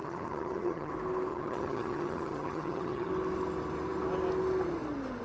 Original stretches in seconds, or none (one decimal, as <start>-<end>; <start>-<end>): 0.9-1.3; 3.1-5.2